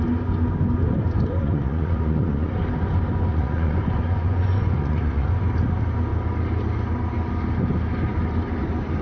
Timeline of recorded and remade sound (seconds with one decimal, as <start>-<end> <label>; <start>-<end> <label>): 0.0-1.4 recorded; 1.4-2.5 remade; 2.5-3.3 recorded; 3.3-5.3 remade; 5.3-9.0 recorded